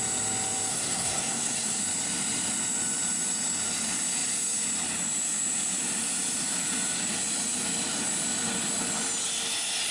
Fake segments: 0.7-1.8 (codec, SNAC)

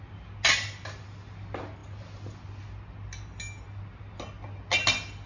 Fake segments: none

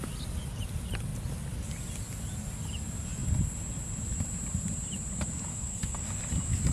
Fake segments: 5.5-6.0 (codec, SNAC)

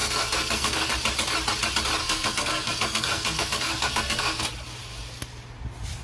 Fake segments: 0.0-0.9 (codec, SNAC); 2.0-4.4

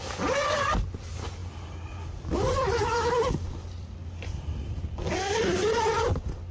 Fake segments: none